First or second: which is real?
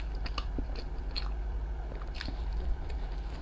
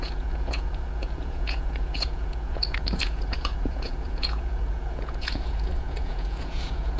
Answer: first